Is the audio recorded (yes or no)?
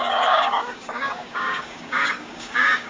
no